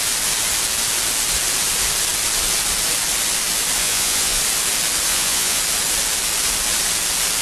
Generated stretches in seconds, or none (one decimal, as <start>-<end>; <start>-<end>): 3.8-4.4; 5.1-5.6